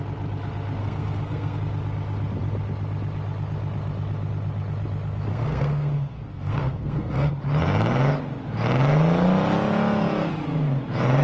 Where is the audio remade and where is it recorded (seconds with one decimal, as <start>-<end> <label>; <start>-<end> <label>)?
0.0-0.8 recorded; 0.8-1.6 remade; 1.6-5.3 recorded; 5.3-7.3 remade; 7.3-11.2 recorded